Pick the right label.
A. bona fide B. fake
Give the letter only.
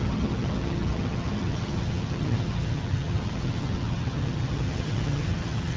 B